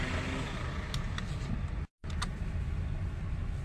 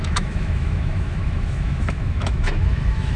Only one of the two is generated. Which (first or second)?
second